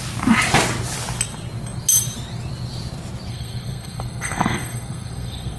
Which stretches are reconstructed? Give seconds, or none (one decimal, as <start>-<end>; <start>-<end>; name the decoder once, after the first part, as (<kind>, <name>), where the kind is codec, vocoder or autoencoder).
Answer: 3.3-5.6 (codec, SNAC)